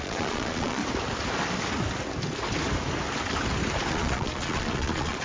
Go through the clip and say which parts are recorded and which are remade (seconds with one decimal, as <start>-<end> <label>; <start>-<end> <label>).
0.0-0.8 remade; 0.8-3.9 recorded; 3.9-5.2 remade